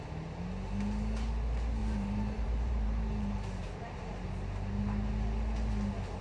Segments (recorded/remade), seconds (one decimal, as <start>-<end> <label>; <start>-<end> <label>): 0.0-1.8 recorded; 1.8-4.0 remade; 4.0-6.2 recorded